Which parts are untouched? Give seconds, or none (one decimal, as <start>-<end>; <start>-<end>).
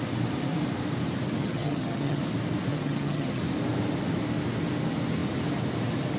0.0-1.4; 2.2-2.7; 3.4-6.2